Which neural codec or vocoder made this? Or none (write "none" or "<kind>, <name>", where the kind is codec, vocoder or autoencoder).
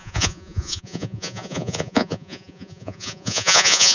vocoder, Vocos